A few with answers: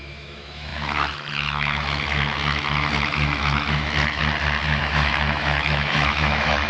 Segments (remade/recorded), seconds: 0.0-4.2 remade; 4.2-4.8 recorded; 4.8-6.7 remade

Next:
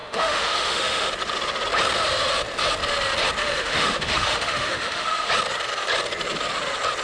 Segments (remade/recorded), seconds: 0.0-1.1 remade; 1.1-3.4 recorded; 3.4-5.3 remade; 5.3-7.0 recorded

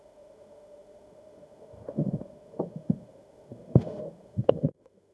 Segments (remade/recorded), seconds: 0.0-5.1 remade

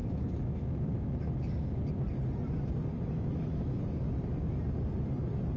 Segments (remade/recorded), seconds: 0.0-1.3 remade; 1.3-2.9 recorded; 2.9-3.8 remade; 3.8-5.6 recorded

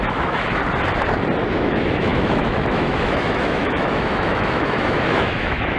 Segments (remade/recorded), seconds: 0.0-0.6 remade; 0.6-1.5 recorded; 1.5-5.8 remade